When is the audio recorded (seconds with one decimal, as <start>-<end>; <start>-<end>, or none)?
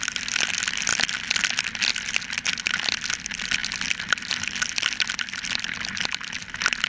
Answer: 0.0-6.9